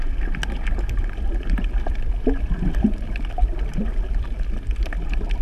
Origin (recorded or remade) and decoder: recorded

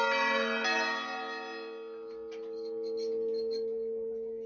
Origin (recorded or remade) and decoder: recorded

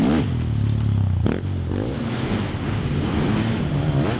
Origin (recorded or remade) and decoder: recorded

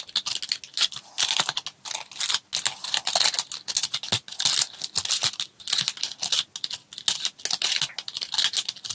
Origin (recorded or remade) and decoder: recorded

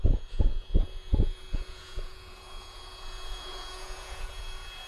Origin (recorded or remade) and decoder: remade, vocoder, Vocos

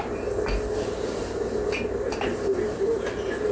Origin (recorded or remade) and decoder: recorded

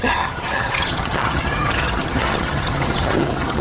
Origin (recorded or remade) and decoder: remade, vocoder, HiFi-GAN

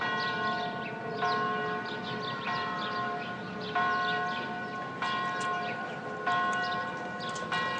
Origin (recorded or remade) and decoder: recorded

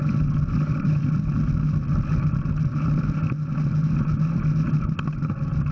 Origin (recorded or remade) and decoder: recorded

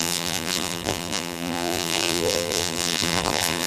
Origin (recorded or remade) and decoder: remade, vocoder, BigVGAN v2